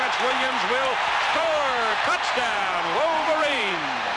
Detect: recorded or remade remade